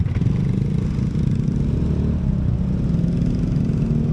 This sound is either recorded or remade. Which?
recorded